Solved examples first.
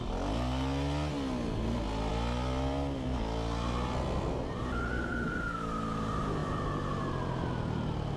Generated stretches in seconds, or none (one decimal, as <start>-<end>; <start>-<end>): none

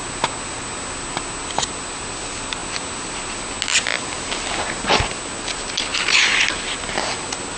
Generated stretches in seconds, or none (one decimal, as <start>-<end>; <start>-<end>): none

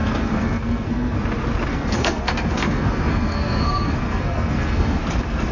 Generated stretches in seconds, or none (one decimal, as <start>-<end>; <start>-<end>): 0.0-1.2; 1.7-5.0

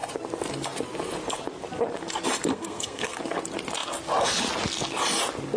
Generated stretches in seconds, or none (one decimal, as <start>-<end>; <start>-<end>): 2.5-3.2

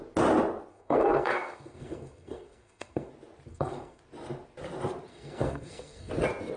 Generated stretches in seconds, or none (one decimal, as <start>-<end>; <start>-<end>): 0.7-3.1; 3.5-4.0; 5.1-6.1

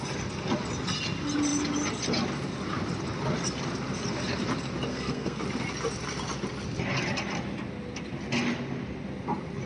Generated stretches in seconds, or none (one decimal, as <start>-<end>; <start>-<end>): 4.9-5.4

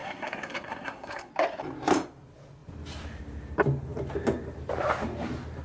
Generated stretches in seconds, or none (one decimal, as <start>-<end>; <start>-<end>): 0.0-1.3